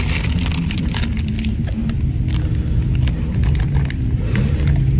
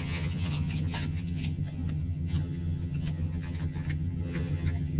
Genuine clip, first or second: first